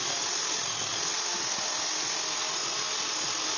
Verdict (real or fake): real